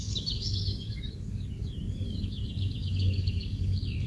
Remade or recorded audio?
remade